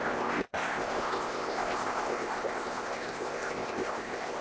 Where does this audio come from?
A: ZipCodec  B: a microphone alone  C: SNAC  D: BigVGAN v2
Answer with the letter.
A